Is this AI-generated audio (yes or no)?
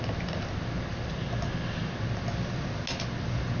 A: no